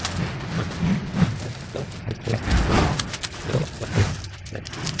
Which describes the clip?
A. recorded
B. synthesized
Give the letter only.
A